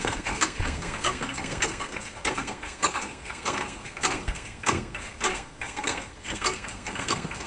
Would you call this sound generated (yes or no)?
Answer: yes